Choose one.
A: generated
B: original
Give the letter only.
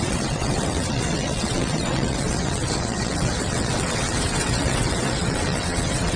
A